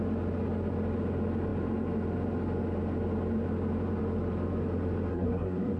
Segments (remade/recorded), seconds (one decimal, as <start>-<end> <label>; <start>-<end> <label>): 0.0-5.1 recorded; 5.1-5.8 remade